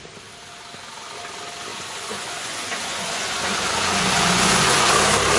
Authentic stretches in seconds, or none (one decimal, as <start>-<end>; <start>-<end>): 0.0-1.7; 4.9-5.4